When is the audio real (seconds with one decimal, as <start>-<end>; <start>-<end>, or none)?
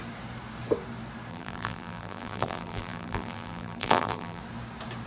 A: 0.0-1.3; 4.4-5.1